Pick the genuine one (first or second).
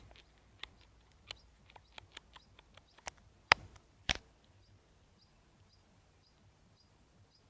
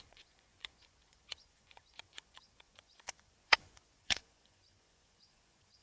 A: first